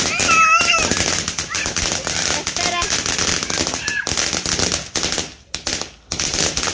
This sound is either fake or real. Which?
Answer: real